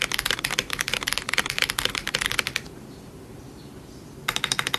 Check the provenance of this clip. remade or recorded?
recorded